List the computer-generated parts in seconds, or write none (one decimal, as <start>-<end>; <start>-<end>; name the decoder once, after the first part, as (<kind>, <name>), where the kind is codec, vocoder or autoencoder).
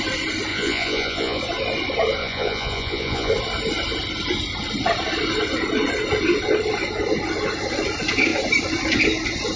0.5-1.4 (vocoder, Vocos); 2.2-3.3